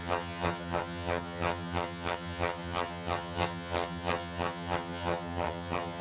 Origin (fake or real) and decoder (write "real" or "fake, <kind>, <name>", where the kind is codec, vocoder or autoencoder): fake, vocoder, HiFi-GAN